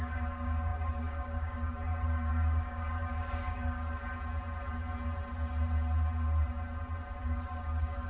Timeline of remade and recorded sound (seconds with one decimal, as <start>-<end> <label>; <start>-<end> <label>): 0.0-4.0 remade; 4.0-7.2 recorded; 7.2-8.1 remade